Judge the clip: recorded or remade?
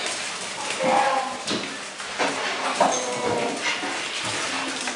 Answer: recorded